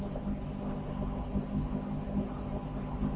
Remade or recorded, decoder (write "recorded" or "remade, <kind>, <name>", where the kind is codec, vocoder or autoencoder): recorded